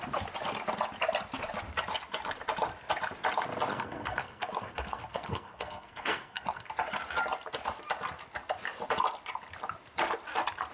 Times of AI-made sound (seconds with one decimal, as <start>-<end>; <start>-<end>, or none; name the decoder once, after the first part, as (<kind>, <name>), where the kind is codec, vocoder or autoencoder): 3.7-6.7 (codec, SNAC)